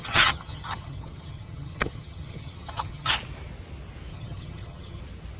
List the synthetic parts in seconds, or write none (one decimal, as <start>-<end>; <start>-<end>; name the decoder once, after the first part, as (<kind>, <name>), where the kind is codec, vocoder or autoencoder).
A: 0.0-3.1 (vocoder, HiFi-GAN); 4.1-5.0